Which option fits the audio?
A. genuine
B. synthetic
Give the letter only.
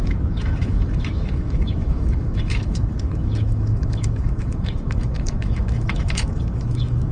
B